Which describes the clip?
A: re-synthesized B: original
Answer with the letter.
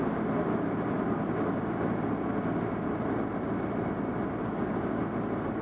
B